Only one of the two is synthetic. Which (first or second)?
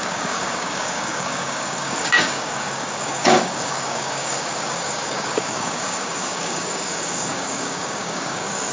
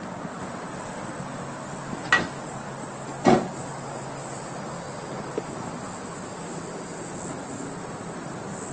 first